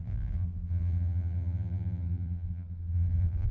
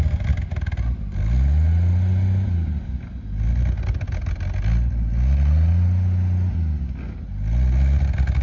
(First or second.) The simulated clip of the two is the first